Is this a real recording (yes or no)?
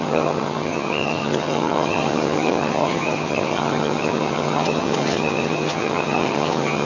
no